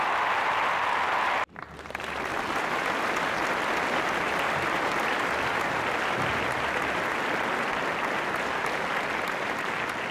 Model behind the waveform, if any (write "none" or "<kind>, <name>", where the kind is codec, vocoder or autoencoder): none